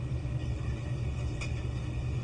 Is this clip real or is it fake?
real